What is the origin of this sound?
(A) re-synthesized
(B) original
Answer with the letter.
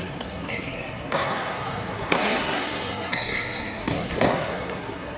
A